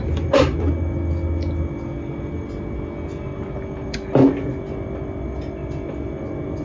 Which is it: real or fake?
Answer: real